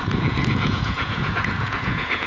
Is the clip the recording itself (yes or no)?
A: no